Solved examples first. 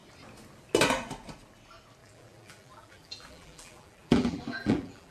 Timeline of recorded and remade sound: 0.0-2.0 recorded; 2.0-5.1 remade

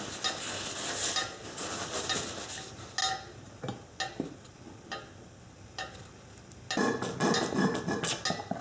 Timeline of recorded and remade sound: 0.0-8.6 recorded

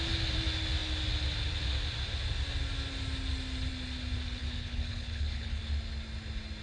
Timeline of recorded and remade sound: 0.0-4.4 recorded; 4.4-5.6 remade; 5.6-6.6 recorded

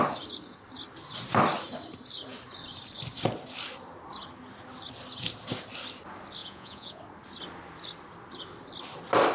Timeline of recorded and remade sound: 0.0-6.4 recorded; 6.4-7.0 remade; 7.0-9.3 recorded